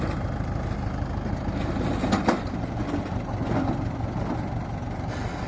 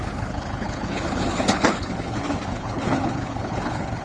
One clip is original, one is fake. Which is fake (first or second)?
second